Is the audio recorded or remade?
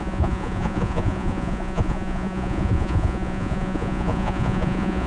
remade